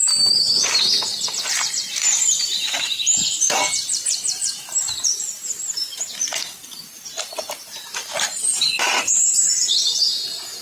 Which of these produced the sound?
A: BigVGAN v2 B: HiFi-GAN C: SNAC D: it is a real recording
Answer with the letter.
A